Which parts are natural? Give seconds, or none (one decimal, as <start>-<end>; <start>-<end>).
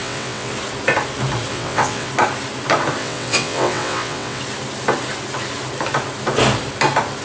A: 0.5-1.5; 2.1-3.0; 4.4-7.2